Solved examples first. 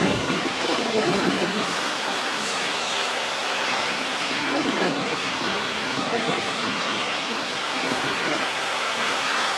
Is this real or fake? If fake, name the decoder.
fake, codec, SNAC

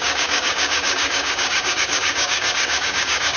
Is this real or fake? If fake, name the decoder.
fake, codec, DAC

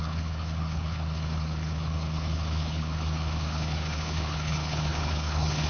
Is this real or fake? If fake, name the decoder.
fake, codec, HILCodec